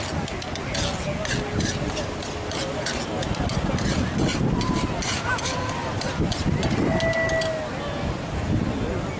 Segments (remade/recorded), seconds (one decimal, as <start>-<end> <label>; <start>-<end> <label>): 0.0-4.3 recorded; 4.3-4.9 remade; 4.9-9.2 recorded